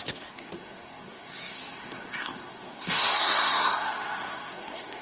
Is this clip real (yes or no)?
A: no